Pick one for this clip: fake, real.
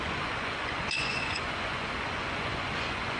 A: fake